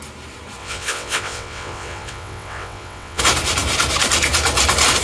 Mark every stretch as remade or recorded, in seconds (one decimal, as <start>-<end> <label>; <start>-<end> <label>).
0.0-0.6 recorded; 0.6-3.2 remade; 3.2-5.0 recorded